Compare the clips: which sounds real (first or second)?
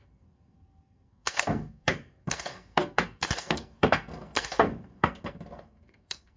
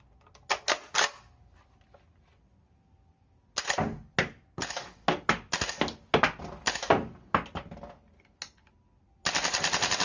second